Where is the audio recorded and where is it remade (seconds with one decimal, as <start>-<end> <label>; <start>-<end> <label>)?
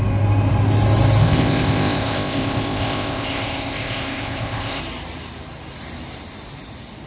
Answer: 0.0-1.2 recorded; 1.2-4.8 remade; 4.8-7.1 recorded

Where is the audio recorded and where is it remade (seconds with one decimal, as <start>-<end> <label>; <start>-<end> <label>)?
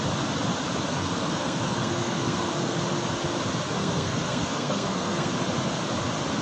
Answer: 0.0-0.9 recorded; 0.9-2.8 remade; 2.8-3.8 recorded; 3.8-5.3 remade; 5.3-6.4 recorded